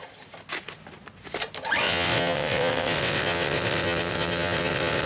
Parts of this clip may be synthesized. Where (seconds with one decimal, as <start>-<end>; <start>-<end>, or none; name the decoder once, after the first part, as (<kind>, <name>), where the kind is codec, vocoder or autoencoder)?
1.8-5.1 (vocoder, WaveNeXt)